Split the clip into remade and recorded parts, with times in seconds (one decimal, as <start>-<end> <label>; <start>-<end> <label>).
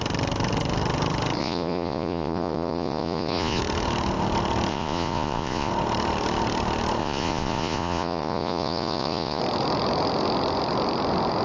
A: 0.0-1.4 recorded; 1.4-3.6 remade; 3.6-4.7 recorded; 4.7-5.7 remade; 5.7-7.0 recorded; 7.0-9.4 remade; 9.4-11.4 recorded